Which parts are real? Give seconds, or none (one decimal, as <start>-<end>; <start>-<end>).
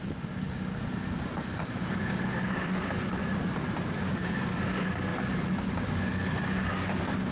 3.2-3.9